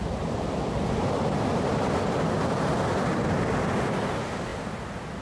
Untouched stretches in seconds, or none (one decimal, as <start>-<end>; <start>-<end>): 0.0-5.2